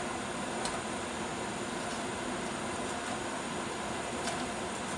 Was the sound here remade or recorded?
recorded